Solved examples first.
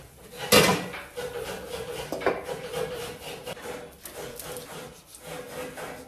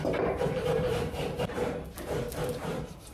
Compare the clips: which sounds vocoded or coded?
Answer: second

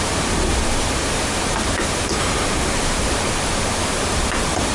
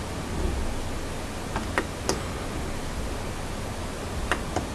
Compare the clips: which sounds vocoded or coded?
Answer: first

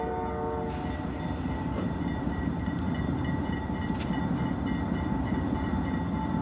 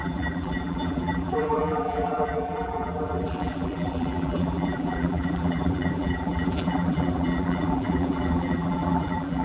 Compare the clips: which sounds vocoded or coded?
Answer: second